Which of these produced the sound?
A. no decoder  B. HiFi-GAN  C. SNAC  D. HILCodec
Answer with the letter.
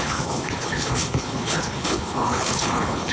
D